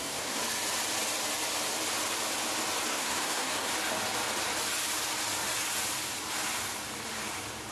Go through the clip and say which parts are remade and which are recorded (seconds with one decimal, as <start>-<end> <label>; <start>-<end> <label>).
0.0-0.4 remade; 0.4-2.9 recorded; 2.9-3.7 remade; 3.7-7.7 recorded